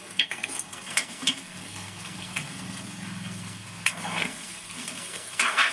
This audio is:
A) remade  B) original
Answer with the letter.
A